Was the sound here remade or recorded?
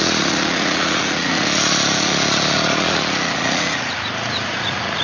remade